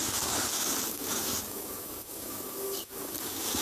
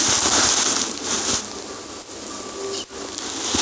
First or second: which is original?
second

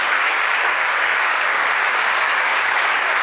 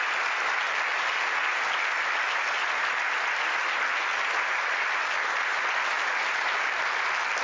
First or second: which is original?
second